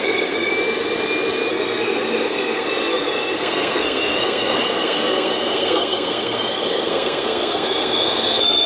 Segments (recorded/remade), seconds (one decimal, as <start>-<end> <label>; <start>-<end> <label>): 0.0-0.5 remade; 0.5-1.5 recorded; 1.5-8.7 remade